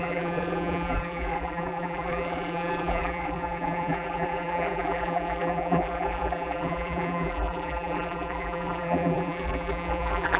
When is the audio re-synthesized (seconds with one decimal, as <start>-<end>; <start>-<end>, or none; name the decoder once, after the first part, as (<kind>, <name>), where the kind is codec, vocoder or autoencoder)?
0.0-10.4 (vocoder, BigVGAN v2)